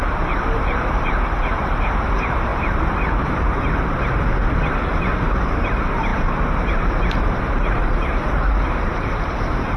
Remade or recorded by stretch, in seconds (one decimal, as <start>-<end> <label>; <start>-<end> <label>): 0.0-9.8 remade